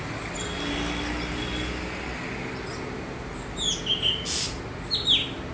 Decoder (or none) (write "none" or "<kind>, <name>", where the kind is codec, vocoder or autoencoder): none